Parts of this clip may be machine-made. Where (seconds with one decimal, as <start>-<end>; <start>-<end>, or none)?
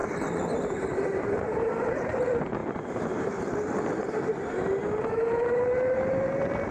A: 0.0-2.2